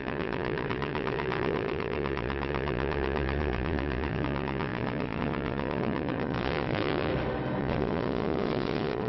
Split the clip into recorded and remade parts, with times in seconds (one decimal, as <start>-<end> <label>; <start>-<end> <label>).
0.0-7.1 remade; 7.1-7.6 recorded; 7.6-9.1 remade